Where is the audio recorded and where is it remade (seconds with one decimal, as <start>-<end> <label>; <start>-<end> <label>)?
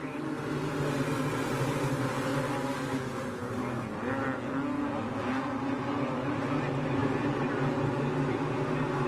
0.0-9.1 recorded